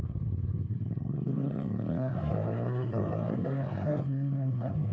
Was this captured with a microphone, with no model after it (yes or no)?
no